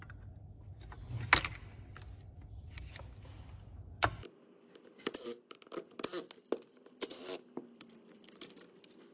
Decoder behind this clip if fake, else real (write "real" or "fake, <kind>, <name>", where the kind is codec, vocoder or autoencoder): real